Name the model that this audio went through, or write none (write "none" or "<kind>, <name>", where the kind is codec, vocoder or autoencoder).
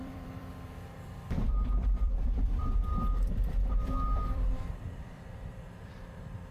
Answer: vocoder, BigVGAN v2